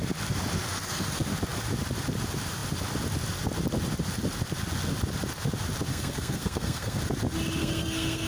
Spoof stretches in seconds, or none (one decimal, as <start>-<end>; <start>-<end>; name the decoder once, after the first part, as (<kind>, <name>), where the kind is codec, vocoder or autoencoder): 5.9-7.0 (codec, SNAC); 7.6-8.3